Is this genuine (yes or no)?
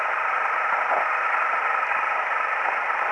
yes